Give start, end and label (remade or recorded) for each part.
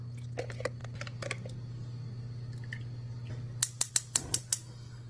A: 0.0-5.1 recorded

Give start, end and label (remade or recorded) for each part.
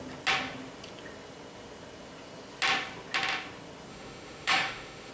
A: 0.0-3.9 recorded; 3.9-5.1 remade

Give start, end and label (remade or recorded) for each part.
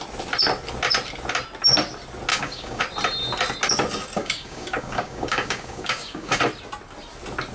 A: 0.0-2.3 recorded; 2.3-2.8 remade; 2.8-4.2 recorded; 4.2-6.4 remade; 6.4-7.5 recorded